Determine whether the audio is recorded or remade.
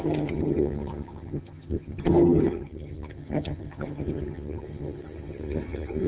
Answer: remade